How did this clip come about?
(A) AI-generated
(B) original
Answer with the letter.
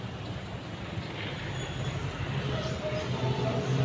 B